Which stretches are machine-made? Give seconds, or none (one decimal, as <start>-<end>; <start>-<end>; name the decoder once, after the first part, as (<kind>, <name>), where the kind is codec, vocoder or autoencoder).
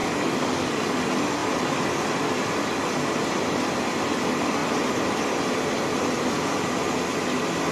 0.0-0.9 (codec, DAC)